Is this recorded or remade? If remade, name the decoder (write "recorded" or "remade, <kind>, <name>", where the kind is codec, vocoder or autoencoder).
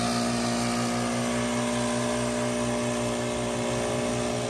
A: recorded